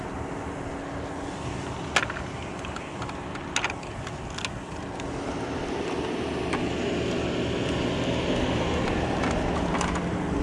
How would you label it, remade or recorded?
recorded